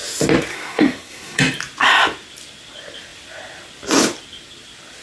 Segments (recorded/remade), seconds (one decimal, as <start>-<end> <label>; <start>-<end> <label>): 0.0-0.5 recorded; 0.5-1.4 remade; 1.4-5.0 recorded